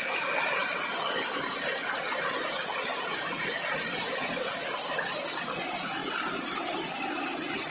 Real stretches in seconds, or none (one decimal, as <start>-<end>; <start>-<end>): 0.0-6.0; 7.3-7.7